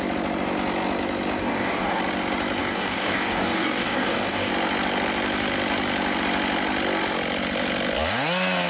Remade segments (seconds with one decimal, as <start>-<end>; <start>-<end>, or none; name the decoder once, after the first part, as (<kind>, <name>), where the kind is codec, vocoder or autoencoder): 1.4-2.0 (codec, DAC); 2.6-4.5